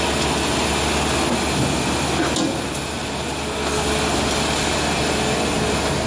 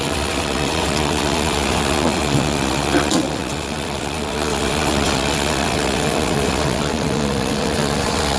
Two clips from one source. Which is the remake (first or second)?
second